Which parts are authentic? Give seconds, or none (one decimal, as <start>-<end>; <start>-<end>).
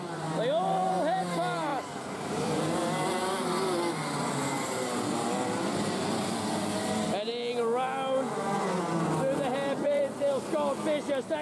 0.0-1.7; 2.6-9.5; 10.0-11.4